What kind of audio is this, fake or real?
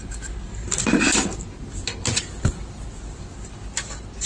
real